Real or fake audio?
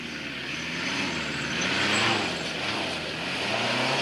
real